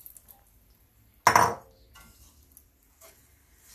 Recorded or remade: recorded